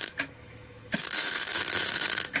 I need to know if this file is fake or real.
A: fake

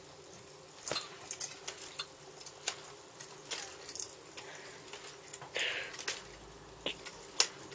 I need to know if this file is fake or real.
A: real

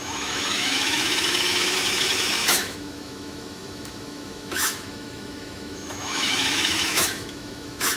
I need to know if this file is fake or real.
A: fake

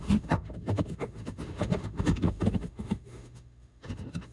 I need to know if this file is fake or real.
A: fake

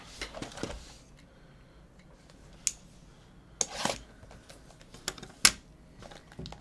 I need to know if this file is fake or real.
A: real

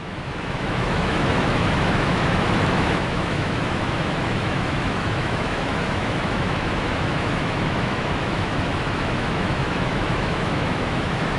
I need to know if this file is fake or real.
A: fake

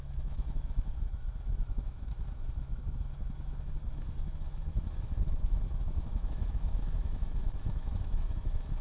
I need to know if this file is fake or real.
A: fake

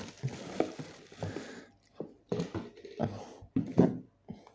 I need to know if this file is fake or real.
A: real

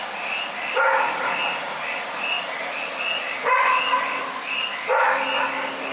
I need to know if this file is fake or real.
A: real